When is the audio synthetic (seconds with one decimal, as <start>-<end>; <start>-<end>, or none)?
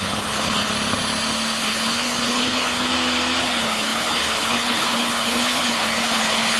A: 0.0-0.7; 1.6-2.9; 3.4-6.6